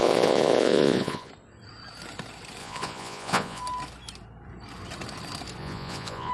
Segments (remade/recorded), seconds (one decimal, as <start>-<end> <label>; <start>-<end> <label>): 0.0-1.3 remade; 1.3-2.6 recorded; 2.6-3.6 remade; 3.6-5.6 recorded; 5.6-6.3 remade